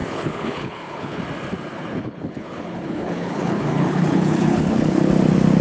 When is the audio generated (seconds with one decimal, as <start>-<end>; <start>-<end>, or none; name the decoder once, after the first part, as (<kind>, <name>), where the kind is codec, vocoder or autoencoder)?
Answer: 0.0-1.2 (codec, HILCodec); 1.7-5.1